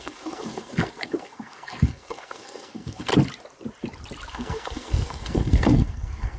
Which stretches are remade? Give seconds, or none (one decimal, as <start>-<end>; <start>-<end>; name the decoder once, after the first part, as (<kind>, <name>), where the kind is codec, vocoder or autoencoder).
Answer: 0.0-3.1 (codec, SNAC); 4.3-6.4